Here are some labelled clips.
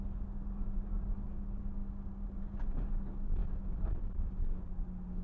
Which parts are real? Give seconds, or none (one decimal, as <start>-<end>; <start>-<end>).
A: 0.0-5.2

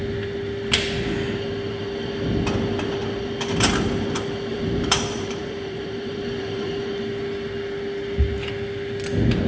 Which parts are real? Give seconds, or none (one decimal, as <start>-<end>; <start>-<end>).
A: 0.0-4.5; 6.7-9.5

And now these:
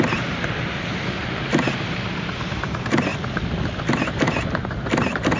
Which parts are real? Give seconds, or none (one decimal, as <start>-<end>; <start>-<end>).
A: 3.1-3.9

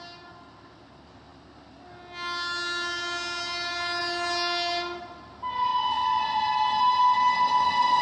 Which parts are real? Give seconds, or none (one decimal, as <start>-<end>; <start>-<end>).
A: 0.0-8.0

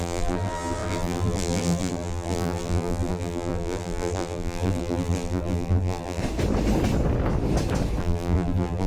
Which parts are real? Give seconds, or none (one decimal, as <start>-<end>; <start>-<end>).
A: 6.2-8.0